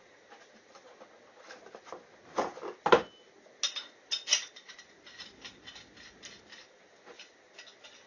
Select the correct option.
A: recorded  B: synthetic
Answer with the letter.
A